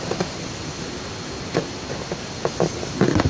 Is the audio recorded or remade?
recorded